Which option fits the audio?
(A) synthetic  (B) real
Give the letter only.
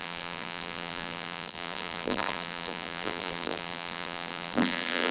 A